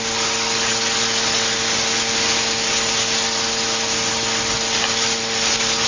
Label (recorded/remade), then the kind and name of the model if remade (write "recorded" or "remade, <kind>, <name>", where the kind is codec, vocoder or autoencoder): recorded